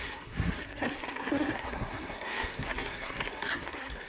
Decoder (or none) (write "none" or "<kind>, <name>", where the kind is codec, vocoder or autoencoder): codec, SNAC